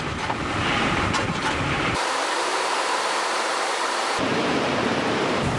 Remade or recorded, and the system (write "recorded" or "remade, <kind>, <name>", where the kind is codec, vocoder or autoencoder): remade, vocoder, BigVGAN v2